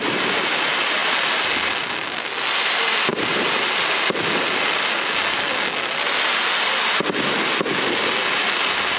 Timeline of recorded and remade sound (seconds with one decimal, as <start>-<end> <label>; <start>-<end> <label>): 0.0-9.0 recorded